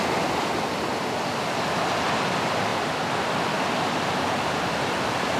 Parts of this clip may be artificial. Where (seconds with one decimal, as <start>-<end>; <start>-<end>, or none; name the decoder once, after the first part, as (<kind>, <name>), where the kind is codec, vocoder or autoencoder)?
none